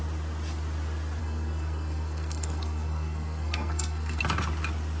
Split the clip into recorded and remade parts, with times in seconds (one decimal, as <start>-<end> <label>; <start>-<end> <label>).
0.0-1.2 recorded; 1.2-4.2 remade; 4.2-5.0 recorded